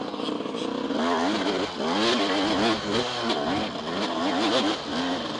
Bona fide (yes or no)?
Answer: yes